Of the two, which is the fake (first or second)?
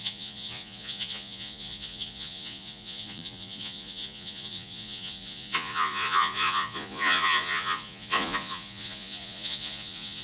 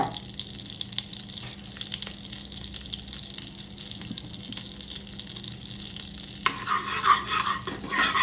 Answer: first